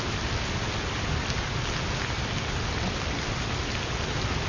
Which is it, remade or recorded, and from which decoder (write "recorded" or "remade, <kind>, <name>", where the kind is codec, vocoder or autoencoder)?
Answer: recorded